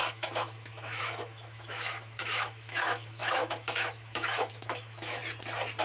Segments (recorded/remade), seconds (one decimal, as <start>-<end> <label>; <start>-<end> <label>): 0.0-5.2 remade; 5.2-5.8 recorded